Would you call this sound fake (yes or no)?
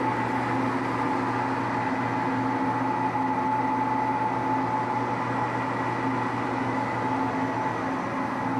no